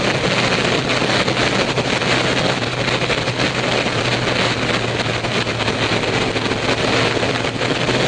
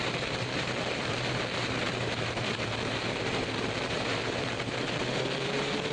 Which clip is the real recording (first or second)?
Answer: first